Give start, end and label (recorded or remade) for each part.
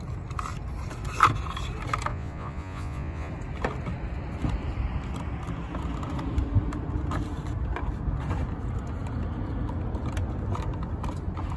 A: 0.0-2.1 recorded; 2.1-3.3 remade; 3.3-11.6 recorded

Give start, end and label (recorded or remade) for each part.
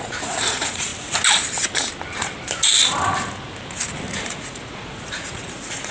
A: 0.0-0.9 remade; 0.9-4.2 recorded; 4.2-5.9 remade